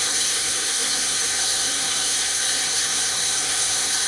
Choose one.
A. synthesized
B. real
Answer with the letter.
A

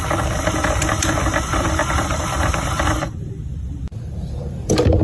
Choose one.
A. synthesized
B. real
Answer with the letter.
A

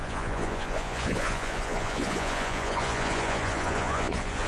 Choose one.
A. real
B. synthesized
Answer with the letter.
B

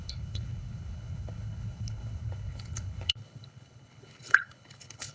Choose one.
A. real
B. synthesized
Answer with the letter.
B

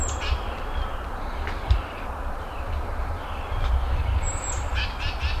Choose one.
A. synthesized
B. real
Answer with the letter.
B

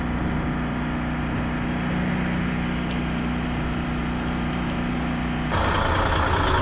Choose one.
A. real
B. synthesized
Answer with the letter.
A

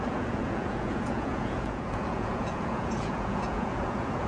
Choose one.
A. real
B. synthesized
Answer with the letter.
B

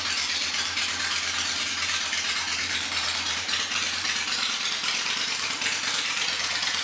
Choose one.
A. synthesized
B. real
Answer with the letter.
A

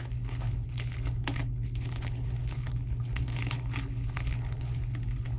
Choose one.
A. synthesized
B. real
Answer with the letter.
A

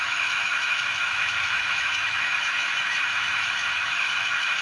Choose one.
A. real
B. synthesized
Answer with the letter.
B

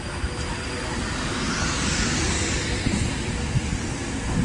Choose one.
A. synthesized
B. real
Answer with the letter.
B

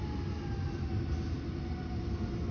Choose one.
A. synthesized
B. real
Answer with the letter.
B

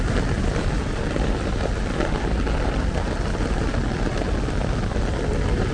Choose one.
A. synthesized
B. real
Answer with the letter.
B